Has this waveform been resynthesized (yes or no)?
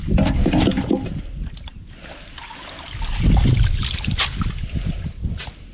no